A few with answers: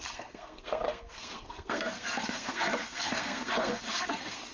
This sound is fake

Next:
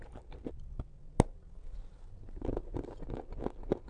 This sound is real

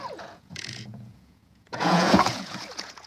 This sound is fake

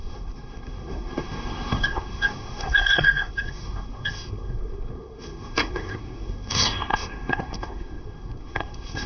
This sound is fake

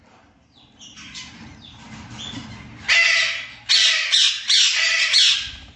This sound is real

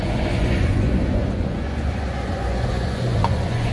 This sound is fake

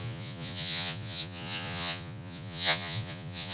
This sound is fake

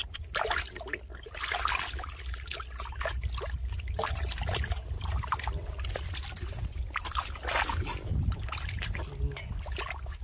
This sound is real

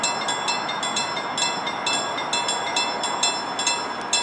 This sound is real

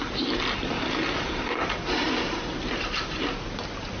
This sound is real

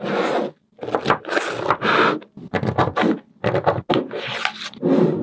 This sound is real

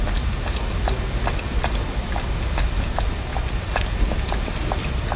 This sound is real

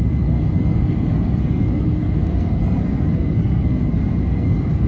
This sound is fake